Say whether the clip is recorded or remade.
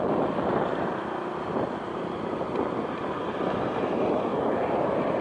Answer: remade